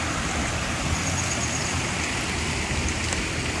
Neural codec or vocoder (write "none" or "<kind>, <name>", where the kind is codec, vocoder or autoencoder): none